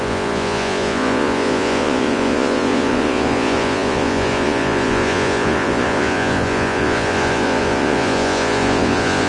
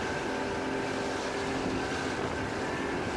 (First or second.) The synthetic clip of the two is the first